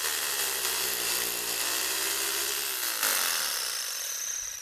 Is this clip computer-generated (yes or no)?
yes